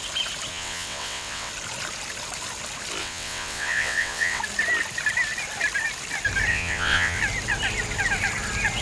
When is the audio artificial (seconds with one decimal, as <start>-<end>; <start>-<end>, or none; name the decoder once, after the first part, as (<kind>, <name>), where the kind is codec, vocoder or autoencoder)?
0.5-1.5 (vocoder, WaveNeXt); 3.0-4.4; 6.5-7.2

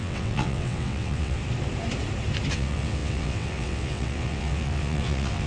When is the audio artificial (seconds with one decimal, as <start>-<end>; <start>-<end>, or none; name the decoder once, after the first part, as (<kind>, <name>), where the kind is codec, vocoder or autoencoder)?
0.0-1.4 (vocoder, WaveNeXt); 2.5-5.5

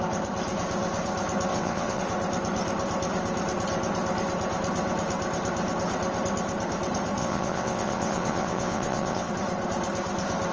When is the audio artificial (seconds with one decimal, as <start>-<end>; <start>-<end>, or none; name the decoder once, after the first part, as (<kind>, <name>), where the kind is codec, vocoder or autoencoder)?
1.5-2.0 (vocoder, WaveNeXt); 7.2-9.3

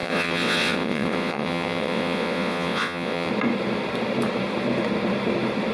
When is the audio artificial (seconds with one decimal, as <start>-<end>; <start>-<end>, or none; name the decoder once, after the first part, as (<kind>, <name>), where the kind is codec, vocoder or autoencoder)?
0.0-3.3 (vocoder, WaveNeXt)

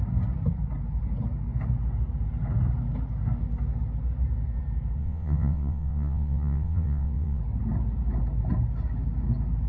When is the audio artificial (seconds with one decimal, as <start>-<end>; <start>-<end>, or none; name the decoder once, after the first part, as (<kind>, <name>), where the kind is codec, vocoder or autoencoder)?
5.0-7.4 (vocoder, WaveNeXt)